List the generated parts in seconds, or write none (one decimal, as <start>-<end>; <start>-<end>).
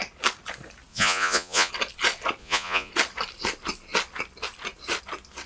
0.9-1.7; 2.4-2.9